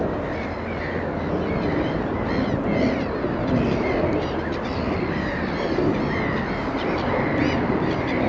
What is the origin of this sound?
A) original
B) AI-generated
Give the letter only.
A